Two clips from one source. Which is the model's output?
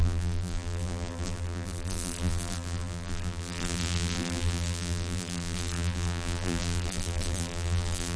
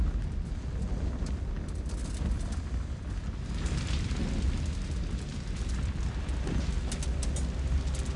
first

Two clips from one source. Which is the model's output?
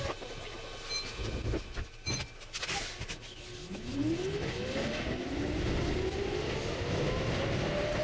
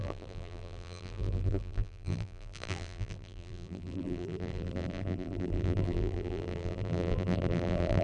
second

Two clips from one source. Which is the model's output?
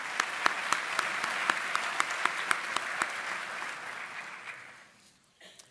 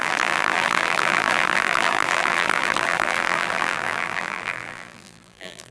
second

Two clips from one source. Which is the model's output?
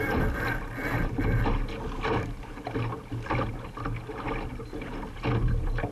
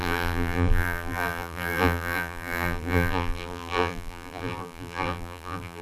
second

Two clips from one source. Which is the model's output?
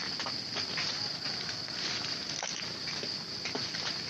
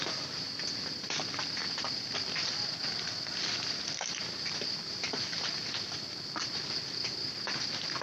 second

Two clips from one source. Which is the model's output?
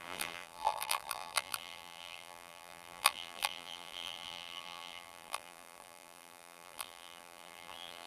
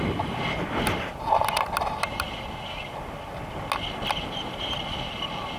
first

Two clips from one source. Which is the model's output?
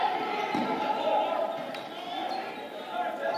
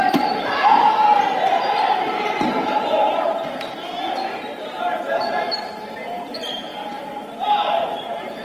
second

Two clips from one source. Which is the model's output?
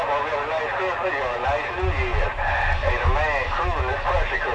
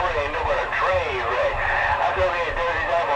second